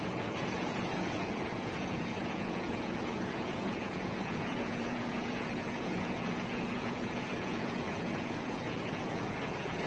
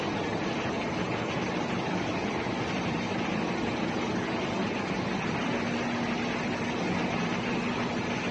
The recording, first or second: second